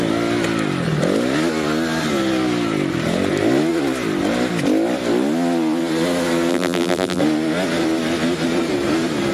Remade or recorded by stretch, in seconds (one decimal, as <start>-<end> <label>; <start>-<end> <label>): 0.0-6.5 recorded; 6.5-7.2 remade; 7.2-9.3 recorded